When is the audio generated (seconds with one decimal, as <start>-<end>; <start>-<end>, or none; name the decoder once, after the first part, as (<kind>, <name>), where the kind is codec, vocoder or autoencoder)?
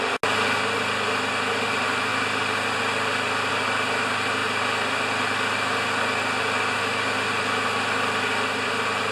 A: none